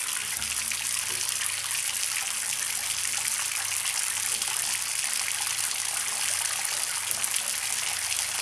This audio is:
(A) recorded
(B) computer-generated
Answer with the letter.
A